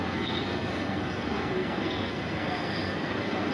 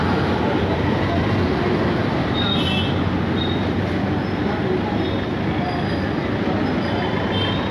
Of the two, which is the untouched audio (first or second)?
second